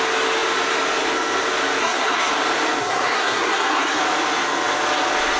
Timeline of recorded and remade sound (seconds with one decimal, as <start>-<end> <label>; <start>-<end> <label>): 0.0-1.8 recorded; 1.8-2.3 remade; 2.3-2.8 recorded; 2.8-4.0 remade; 4.0-5.4 recorded